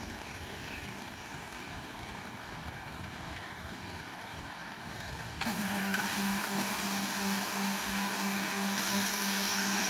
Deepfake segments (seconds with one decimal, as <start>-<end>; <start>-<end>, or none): 0.0-9.9